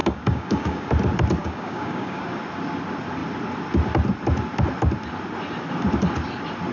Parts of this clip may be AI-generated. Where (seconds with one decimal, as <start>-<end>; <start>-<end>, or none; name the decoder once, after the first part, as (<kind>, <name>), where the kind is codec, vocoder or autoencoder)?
0.0-0.9 (codec, DAC); 1.4-2.2